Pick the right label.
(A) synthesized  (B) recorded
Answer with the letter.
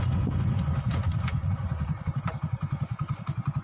A